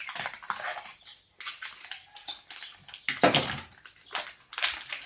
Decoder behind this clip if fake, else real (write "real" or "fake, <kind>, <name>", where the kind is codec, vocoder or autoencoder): real